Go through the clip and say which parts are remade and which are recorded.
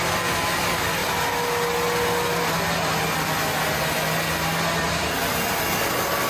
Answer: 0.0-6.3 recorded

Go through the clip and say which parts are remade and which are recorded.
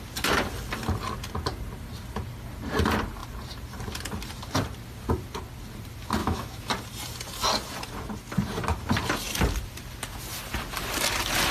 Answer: 0.0-6.2 recorded; 6.2-6.7 remade; 6.7-11.5 recorded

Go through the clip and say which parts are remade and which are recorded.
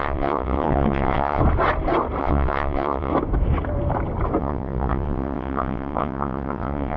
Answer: 0.0-1.4 remade; 1.4-2.2 recorded; 2.2-3.1 remade; 3.1-4.4 recorded; 4.4-7.0 remade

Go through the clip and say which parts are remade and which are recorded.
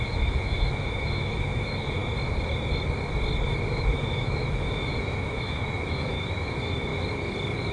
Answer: 0.0-2.0 remade; 2.0-3.7 recorded; 3.7-6.9 remade; 6.9-7.7 recorded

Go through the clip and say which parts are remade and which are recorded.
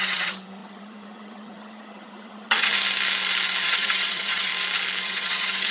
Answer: 0.0-2.7 remade; 2.7-3.6 recorded; 3.6-4.5 remade; 4.5-5.0 recorded; 5.0-5.7 remade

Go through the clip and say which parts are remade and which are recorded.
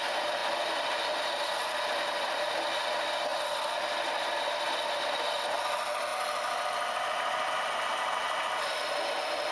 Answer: 0.0-9.5 recorded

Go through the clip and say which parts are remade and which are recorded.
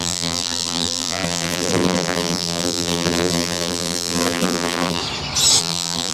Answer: 0.0-5.0 remade; 5.0-5.6 recorded; 5.6-6.1 remade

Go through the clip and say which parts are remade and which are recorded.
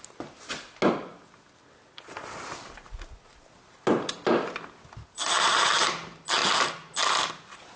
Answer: 0.0-7.8 recorded